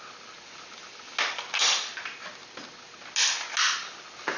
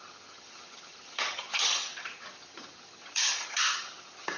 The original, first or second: first